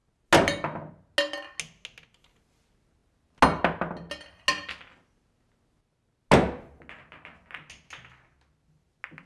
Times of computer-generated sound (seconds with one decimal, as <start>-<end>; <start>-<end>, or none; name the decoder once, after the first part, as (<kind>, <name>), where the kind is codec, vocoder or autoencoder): none